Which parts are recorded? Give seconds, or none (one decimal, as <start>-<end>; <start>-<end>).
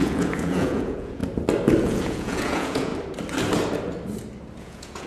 1.2-1.8; 2.9-4.6